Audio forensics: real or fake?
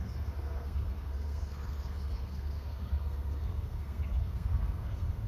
fake